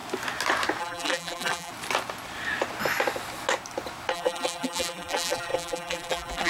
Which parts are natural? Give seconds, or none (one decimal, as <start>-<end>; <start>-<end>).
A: 0.0-0.8; 1.7-4.1